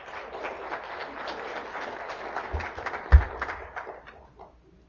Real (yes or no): yes